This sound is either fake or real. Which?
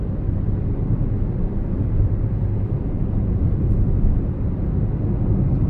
real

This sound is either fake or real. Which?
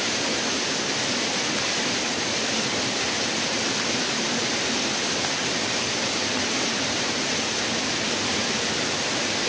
real